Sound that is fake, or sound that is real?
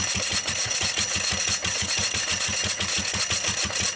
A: fake